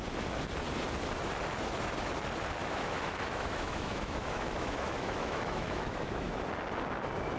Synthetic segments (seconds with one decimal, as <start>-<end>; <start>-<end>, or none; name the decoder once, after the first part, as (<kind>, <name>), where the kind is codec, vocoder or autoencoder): 2.6-6.4 (autoencoder, DAC-VAE)